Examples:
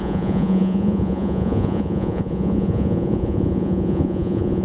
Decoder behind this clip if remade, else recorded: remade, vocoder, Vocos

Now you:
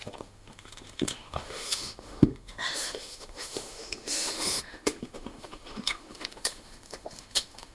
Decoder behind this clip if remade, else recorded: remade, autoencoder, DAC-VAE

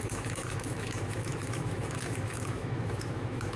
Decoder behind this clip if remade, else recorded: remade, autoencoder, DAC-VAE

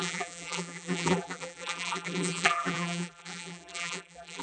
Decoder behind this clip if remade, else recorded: remade, vocoder, BigVGAN v2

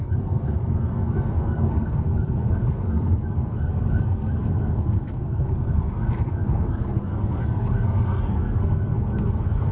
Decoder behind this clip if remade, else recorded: remade, codec, SNAC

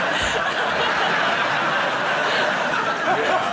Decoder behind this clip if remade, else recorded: recorded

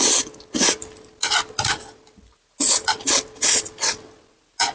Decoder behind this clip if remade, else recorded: recorded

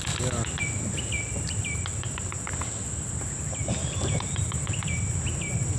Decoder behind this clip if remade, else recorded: recorded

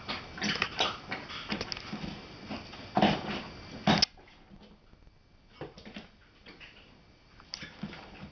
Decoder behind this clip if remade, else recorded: recorded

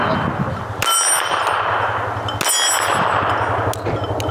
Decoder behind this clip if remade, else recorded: recorded